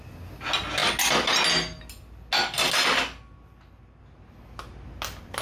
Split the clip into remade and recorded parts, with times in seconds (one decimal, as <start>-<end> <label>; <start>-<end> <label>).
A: 0.0-5.4 recorded